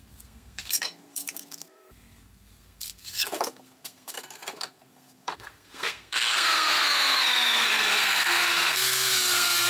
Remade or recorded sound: remade